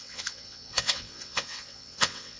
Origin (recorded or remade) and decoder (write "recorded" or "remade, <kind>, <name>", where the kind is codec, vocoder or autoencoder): remade, vocoder, WaveNeXt